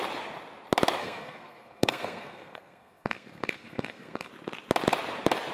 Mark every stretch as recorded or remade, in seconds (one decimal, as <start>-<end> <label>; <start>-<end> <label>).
0.0-1.0 recorded; 1.0-4.3 remade; 4.3-5.5 recorded